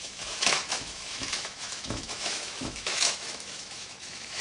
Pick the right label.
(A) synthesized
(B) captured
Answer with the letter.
A